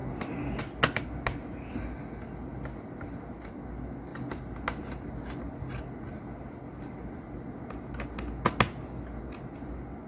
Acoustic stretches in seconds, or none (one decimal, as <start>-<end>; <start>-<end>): 0.0-10.1